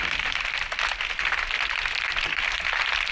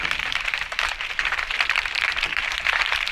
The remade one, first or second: second